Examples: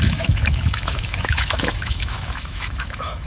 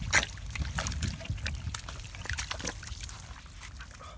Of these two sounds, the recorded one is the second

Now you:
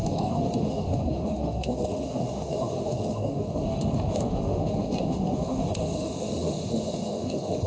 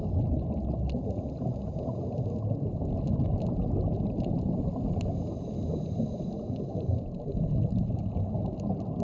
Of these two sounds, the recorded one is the second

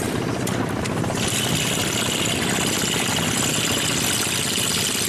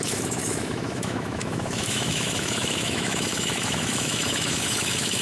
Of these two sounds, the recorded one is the first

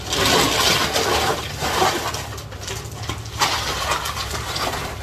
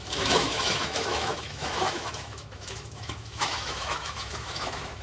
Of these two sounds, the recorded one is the first